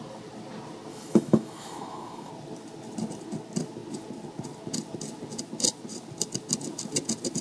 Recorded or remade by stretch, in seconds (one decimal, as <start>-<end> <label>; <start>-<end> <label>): 0.0-0.9 recorded; 0.9-2.3 remade; 2.3-7.4 recorded